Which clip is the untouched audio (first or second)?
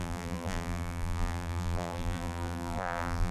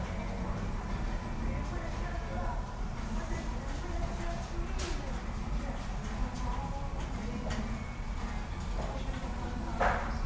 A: second